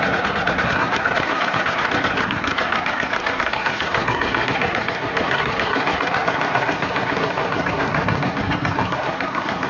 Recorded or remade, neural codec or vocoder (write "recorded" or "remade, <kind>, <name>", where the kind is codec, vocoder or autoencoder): remade, codec, SNAC